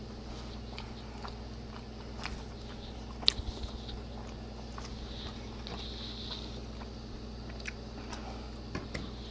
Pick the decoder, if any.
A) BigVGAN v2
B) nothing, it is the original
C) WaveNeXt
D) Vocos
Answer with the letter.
B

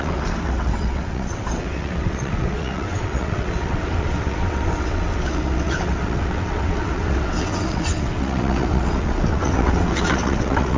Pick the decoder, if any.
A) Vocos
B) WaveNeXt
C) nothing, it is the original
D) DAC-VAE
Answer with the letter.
B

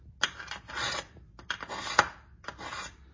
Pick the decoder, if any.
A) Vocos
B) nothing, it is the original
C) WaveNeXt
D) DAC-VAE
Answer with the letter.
B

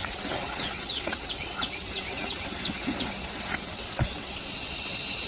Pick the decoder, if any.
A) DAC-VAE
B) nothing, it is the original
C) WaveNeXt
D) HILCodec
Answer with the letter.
C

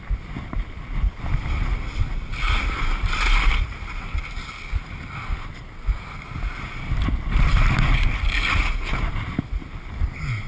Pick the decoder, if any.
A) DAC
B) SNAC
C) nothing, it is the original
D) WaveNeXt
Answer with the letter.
C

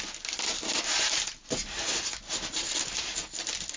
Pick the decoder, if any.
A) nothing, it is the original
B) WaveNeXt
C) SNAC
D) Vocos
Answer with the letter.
A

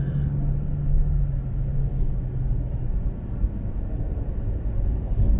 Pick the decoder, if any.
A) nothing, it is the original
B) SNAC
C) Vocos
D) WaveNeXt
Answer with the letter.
A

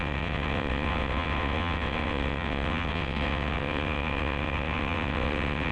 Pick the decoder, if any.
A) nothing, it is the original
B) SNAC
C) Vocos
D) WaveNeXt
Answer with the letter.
D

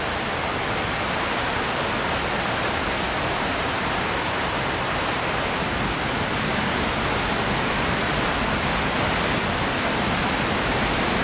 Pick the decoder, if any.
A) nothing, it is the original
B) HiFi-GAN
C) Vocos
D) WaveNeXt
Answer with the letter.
A